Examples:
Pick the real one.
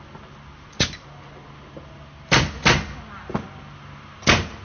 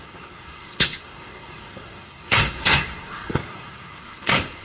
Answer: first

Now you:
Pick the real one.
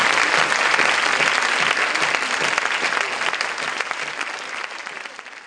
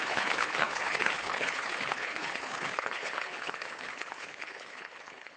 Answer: first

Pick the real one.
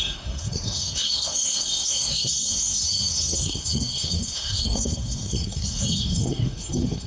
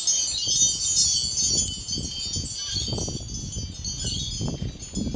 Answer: second